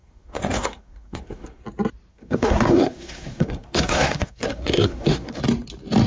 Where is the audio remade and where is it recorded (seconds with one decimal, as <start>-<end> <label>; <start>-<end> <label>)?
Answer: 0.0-1.6 remade; 1.6-2.1 recorded; 2.1-5.4 remade; 5.4-6.1 recorded